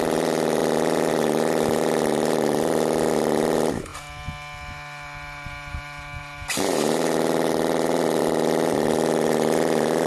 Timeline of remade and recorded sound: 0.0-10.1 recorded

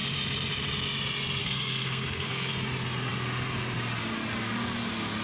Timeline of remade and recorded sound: 0.0-1.4 recorded; 1.4-2.5 remade; 2.5-5.2 recorded